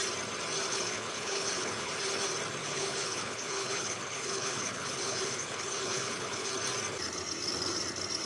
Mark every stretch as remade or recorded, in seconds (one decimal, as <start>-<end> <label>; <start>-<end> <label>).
0.0-0.7 recorded; 0.7-1.9 remade; 1.9-2.6 recorded; 2.6-6.5 remade; 6.5-8.3 recorded